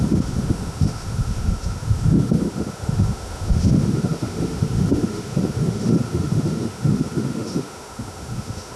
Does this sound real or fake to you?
fake